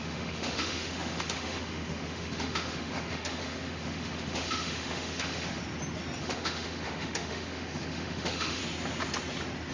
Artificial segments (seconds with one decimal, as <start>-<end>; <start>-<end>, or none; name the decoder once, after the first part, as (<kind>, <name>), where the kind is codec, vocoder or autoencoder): 0.0-5.6 (autoencoder, DAC-VAE); 6.2-8.6